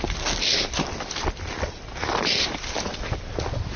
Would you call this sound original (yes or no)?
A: yes